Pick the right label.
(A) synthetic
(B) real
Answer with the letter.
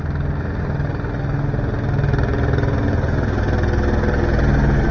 B